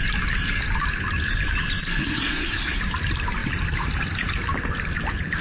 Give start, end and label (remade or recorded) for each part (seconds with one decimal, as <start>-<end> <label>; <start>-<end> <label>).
0.0-1.9 recorded; 1.9-2.8 remade; 2.8-5.4 recorded